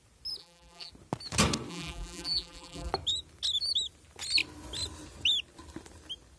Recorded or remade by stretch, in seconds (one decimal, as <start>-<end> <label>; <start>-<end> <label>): 0.0-0.4 recorded; 0.4-0.9 remade; 0.9-1.7 recorded; 1.7-2.9 remade; 2.9-6.4 recorded